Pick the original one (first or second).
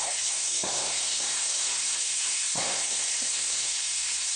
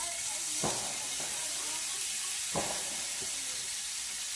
second